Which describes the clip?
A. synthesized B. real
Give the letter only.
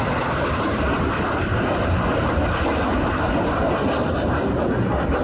B